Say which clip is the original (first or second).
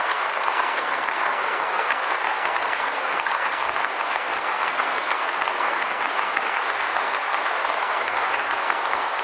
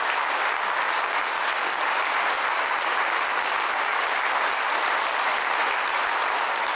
second